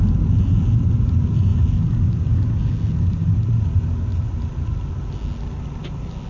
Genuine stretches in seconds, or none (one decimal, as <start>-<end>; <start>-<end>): 0.0-6.3